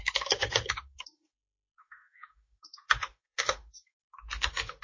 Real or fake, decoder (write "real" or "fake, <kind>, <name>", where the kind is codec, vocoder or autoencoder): fake, autoencoder, DAC-VAE